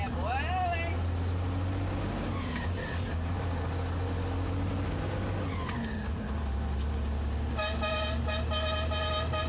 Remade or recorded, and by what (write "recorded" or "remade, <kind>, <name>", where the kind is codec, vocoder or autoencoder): recorded